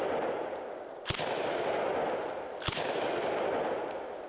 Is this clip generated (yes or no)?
no